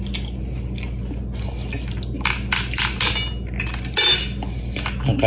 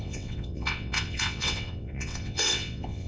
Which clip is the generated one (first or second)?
second